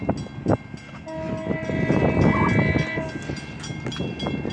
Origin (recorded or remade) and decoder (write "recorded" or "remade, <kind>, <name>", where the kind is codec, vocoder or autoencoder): recorded